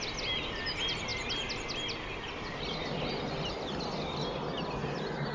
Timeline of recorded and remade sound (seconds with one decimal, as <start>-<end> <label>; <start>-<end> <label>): 0.0-5.3 recorded